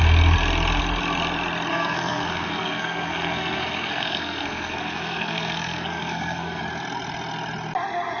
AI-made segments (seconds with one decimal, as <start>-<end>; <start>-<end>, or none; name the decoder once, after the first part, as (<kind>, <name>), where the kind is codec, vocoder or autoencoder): 1.7-6.6 (codec, SNAC)